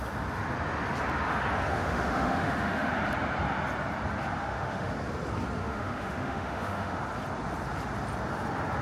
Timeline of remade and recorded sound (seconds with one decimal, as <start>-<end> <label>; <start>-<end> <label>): 0.0-1.7 recorded; 1.7-2.9 remade; 2.9-4.4 recorded; 4.4-4.9 remade; 4.9-5.6 recorded; 5.6-7.0 remade; 7.0-8.8 recorded